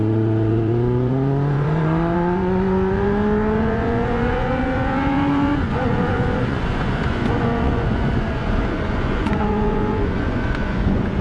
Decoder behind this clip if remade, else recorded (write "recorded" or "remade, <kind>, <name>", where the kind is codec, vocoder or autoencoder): remade, vocoder, Vocos